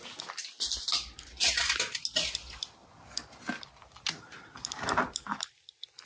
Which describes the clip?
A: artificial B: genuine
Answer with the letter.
B